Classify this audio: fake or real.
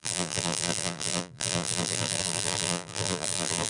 fake